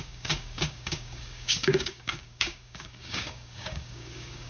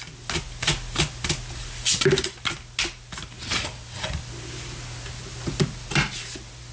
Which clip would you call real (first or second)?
second